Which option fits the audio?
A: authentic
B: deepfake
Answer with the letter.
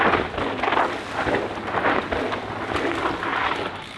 A